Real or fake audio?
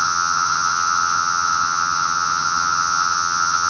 fake